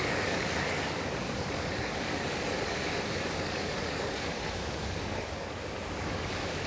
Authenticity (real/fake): fake